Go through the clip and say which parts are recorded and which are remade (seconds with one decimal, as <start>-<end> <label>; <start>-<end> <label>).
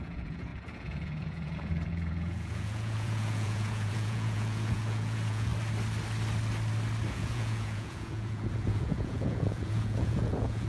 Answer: 0.0-5.5 remade; 5.5-7.1 recorded; 7.1-10.7 remade